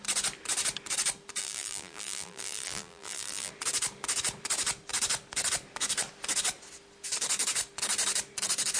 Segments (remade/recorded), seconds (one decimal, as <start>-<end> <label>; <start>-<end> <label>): 0.0-1.4 recorded; 1.4-3.5 remade; 3.5-8.8 recorded